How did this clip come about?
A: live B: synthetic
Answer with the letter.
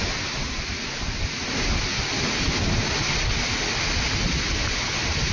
A